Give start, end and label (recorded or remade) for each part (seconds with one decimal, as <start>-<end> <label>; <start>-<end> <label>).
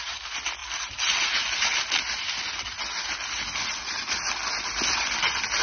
0.0-5.6 recorded